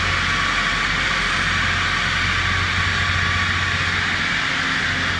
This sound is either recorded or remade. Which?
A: recorded